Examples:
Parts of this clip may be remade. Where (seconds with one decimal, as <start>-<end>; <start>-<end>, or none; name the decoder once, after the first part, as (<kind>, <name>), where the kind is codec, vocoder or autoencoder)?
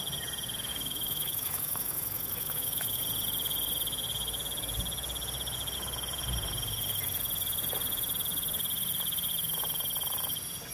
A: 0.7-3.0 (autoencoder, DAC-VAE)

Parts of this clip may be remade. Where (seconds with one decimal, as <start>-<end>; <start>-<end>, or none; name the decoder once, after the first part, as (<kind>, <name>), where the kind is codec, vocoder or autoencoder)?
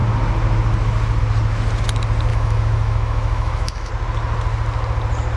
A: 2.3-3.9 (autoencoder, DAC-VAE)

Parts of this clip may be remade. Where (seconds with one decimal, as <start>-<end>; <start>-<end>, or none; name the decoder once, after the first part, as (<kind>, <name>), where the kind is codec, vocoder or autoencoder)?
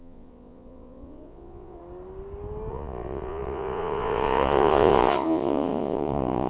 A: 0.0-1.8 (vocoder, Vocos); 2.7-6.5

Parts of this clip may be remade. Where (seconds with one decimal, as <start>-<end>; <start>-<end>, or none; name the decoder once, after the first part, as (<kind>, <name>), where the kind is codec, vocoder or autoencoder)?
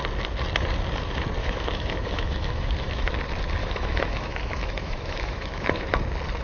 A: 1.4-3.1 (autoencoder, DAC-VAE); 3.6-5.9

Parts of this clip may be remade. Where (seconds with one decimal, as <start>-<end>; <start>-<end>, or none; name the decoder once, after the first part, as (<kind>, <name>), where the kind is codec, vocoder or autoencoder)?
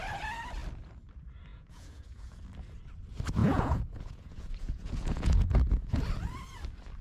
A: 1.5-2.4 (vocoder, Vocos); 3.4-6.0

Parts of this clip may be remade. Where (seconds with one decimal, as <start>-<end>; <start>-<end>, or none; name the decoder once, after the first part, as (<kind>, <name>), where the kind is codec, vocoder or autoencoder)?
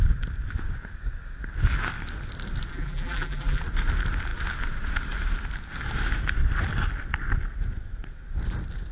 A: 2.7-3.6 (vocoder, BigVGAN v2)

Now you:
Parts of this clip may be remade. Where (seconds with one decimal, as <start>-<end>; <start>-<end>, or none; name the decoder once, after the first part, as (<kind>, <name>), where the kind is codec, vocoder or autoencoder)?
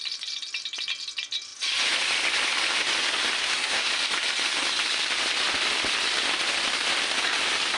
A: 3.4-3.9 (codec, SNAC)